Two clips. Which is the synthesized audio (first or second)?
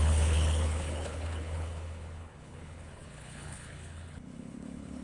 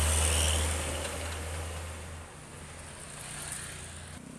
first